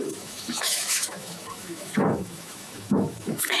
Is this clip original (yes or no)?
no